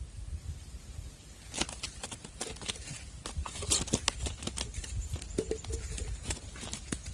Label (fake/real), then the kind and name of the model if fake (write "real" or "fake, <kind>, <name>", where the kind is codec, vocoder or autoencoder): real